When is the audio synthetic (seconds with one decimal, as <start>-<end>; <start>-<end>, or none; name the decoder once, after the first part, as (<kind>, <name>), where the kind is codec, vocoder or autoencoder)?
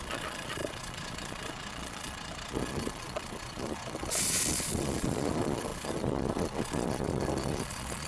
0.0-8.1 (vocoder, Vocos)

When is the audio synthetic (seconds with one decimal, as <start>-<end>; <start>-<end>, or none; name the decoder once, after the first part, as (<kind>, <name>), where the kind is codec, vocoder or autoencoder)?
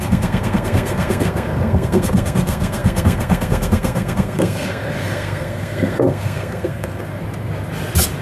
0.0-7.2 (codec, SNAC)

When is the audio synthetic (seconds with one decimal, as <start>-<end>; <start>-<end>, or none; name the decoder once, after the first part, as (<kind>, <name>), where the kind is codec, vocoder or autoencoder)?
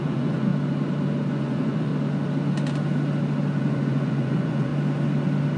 0.0-0.5 (vocoder, Vocos); 1.3-1.9; 3.6-4.7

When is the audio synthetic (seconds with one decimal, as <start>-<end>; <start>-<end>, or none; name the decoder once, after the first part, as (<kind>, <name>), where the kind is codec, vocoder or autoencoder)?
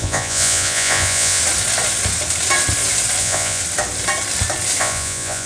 0.0-1.4 (vocoder, Vocos); 3.2-3.6; 4.8-5.5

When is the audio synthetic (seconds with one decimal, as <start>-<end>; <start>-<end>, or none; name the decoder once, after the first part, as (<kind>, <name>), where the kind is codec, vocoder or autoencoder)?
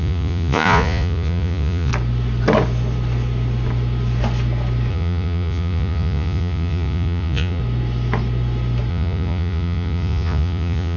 0.0-1.9 (vocoder, Vocos); 4.9-7.6; 8.9-11.0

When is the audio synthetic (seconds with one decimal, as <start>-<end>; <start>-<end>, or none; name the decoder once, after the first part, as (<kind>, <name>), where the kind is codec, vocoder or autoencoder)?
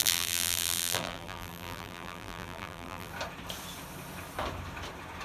0.0-3.1 (vocoder, BigVGAN v2)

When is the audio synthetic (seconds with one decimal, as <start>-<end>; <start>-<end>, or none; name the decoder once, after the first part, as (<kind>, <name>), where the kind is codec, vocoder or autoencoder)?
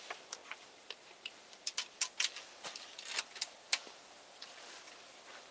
none